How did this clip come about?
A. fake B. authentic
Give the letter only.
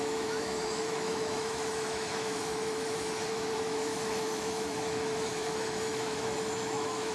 A